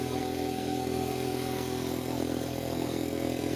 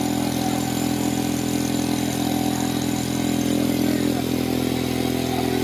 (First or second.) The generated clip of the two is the first